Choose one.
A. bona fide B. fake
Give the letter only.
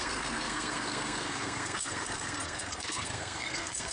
B